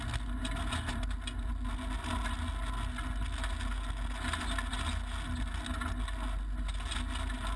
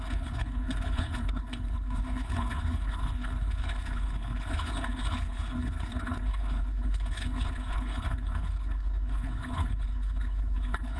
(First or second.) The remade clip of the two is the second